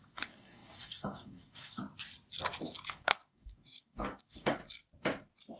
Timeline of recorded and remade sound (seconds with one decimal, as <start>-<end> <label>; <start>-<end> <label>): 0.0-1.8 remade; 1.8-2.9 recorded; 2.9-4.6 remade; 4.6-5.6 recorded